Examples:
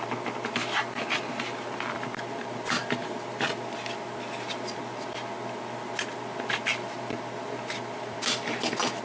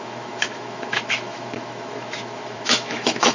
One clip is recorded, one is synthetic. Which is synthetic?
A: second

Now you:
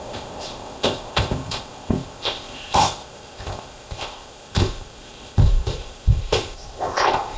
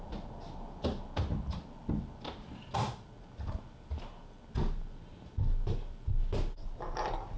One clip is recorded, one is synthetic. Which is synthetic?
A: first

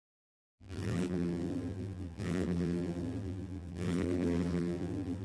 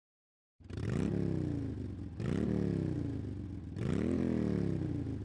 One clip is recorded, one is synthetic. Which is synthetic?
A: first